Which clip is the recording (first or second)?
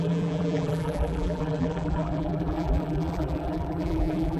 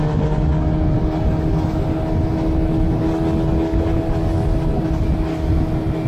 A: second